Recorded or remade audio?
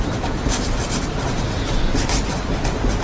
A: recorded